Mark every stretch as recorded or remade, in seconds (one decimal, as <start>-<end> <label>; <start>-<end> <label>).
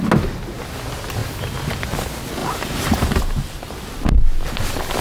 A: 0.0-2.4 recorded; 2.4-3.6 remade; 3.6-5.0 recorded